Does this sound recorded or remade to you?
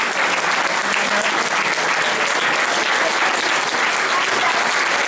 recorded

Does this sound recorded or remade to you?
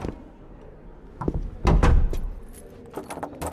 recorded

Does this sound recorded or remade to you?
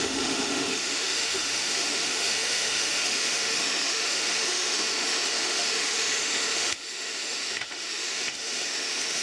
remade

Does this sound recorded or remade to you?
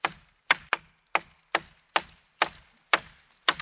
recorded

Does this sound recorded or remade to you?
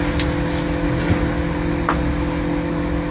recorded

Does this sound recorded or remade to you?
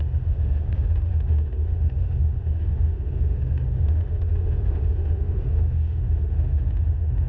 remade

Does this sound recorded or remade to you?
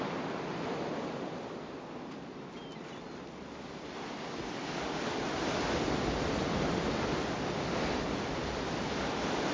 recorded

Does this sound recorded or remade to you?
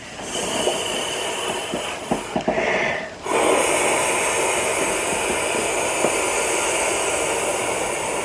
recorded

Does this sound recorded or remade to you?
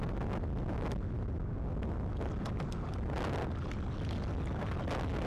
recorded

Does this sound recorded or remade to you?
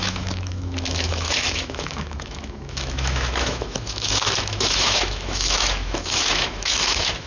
remade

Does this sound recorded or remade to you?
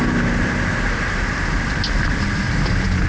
recorded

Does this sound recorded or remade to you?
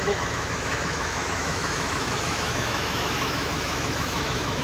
remade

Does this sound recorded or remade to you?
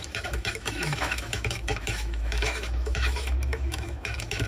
remade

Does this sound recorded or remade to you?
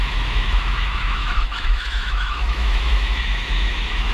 remade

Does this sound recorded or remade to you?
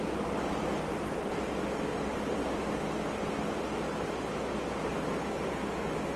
recorded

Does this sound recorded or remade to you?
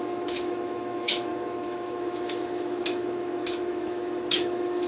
remade